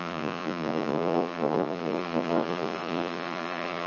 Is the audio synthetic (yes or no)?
yes